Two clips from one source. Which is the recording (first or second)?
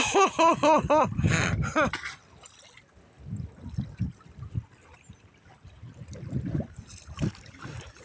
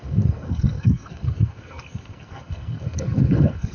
first